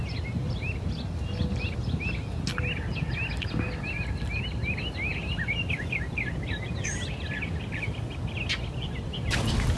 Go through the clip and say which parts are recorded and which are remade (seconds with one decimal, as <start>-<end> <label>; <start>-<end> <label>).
0.0-9.8 recorded